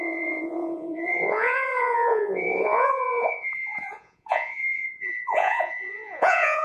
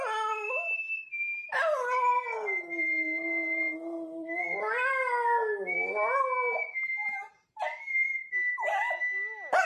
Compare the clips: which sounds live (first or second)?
second